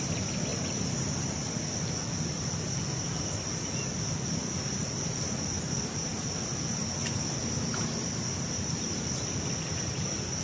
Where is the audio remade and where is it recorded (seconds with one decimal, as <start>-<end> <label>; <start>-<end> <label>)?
0.0-10.4 recorded